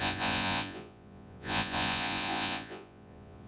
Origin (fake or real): fake